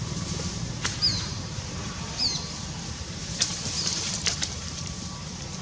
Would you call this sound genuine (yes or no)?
no